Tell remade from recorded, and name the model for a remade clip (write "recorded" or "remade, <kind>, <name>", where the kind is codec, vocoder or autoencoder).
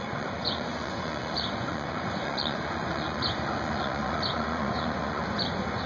remade, vocoder, Vocos